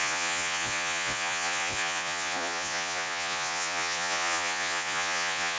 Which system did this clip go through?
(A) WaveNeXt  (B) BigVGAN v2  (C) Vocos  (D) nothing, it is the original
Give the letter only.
C